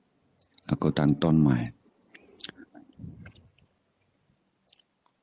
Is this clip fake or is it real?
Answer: real